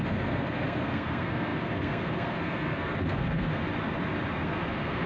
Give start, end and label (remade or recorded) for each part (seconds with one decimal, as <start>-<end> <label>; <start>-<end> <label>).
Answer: 0.0-3.6 remade; 3.6-4.3 recorded; 4.3-5.1 remade